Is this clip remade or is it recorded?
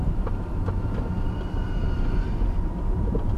recorded